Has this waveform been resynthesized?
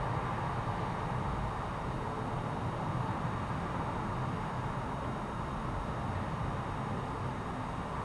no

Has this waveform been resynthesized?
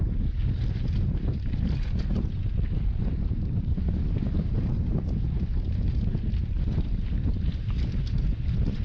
yes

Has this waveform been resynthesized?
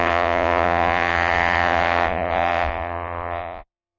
yes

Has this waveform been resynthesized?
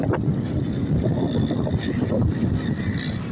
no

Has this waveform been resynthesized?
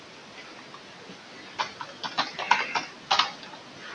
no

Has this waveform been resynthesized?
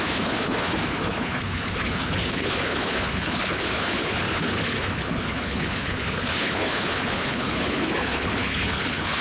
yes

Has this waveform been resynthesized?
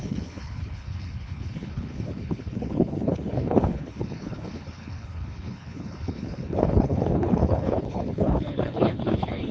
yes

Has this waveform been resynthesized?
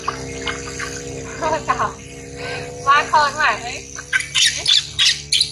no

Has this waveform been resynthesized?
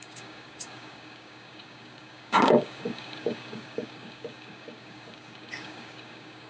yes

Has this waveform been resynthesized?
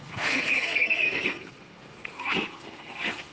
yes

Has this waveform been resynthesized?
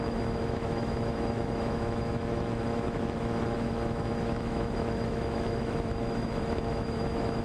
yes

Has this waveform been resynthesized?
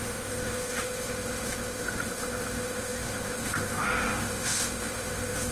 yes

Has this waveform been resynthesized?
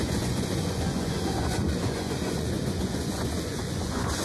yes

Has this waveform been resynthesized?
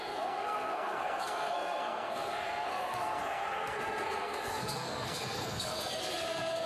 yes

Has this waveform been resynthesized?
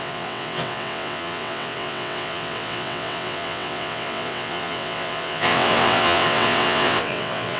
yes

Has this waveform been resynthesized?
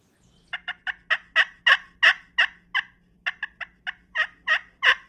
no